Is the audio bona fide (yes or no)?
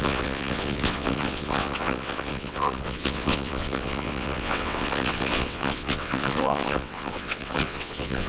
no